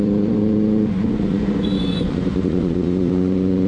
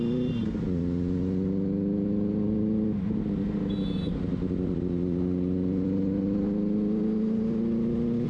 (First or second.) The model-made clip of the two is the first